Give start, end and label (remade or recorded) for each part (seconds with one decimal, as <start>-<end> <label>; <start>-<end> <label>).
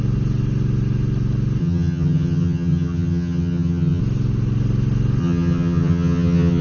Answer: 0.0-1.6 recorded; 1.6-4.0 remade; 4.0-5.2 recorded; 5.2-6.6 remade